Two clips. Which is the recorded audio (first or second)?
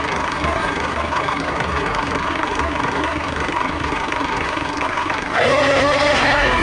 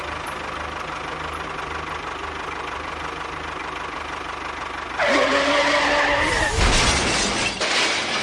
second